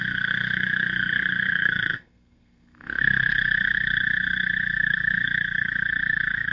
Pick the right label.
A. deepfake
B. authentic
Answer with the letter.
A